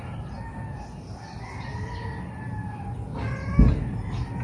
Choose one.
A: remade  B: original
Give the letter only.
B